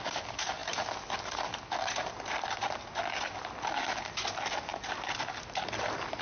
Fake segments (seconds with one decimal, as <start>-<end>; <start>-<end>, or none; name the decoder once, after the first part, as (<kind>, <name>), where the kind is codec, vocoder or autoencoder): none